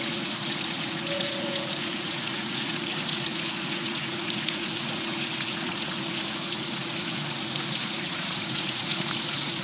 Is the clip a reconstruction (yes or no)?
yes